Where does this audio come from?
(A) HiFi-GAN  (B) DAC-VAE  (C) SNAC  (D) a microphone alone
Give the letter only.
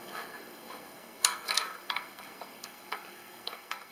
C